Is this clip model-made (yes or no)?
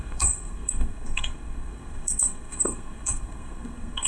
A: yes